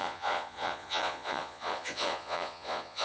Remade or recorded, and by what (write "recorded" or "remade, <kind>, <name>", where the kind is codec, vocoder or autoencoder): remade, vocoder, Vocos